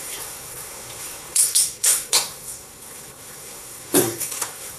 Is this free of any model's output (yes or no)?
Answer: no